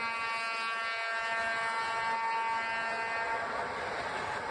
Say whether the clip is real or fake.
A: real